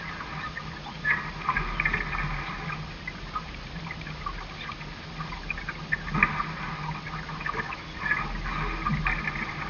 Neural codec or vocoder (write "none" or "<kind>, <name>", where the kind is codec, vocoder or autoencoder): none